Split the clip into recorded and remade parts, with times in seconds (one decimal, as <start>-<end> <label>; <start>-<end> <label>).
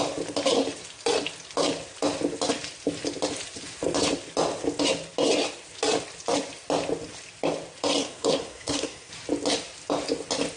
0.0-8.0 recorded; 8.0-9.1 remade; 9.1-10.6 recorded